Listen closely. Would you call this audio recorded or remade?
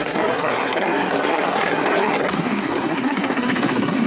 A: remade